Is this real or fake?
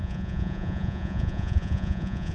fake